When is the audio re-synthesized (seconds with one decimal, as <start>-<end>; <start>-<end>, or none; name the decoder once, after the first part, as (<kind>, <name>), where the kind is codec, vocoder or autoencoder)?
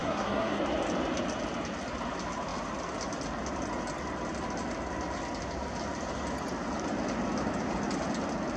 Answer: 0.0-0.6 (codec, SNAC)